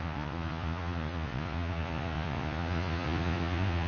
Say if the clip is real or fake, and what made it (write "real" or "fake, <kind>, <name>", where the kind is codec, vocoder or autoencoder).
fake, vocoder, Vocos